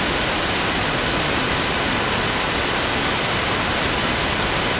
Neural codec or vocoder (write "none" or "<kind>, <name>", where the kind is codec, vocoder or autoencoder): none